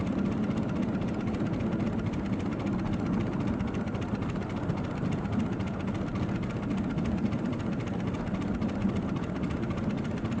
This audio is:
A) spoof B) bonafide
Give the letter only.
B